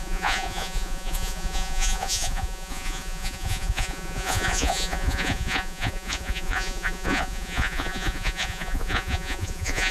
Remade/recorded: remade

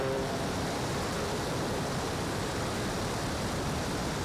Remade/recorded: remade